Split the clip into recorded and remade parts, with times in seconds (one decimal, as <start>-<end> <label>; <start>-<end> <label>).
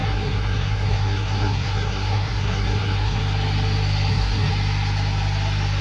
0.0-3.2 remade; 3.2-4.1 recorded; 4.1-4.5 remade; 4.5-5.8 recorded